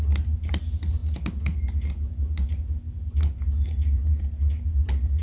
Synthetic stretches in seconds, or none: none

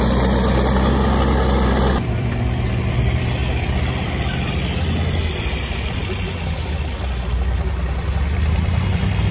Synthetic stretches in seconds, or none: 0.0-6.0; 7.7-9.3

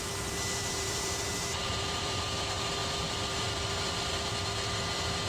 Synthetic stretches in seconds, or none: 0.6-2.4; 2.8-4.8

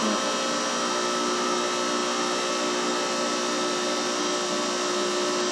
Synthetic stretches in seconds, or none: none

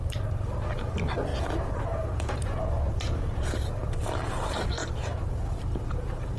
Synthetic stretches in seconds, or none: 0.0-6.4

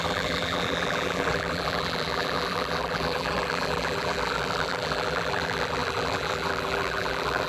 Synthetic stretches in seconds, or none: 0.0-7.5

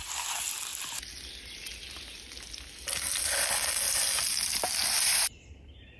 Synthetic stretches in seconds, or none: 4.8-5.5

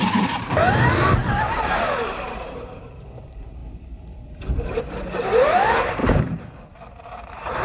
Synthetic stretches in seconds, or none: 0.0-6.0; 6.9-7.6